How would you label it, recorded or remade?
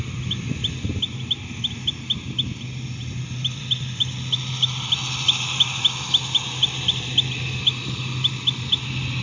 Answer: recorded